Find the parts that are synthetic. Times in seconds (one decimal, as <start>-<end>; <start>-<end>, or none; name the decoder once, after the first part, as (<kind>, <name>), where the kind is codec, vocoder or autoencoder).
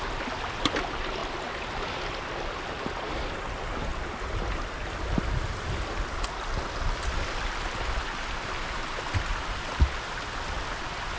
none